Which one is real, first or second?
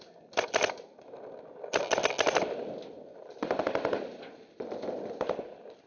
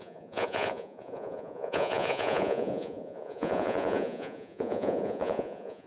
first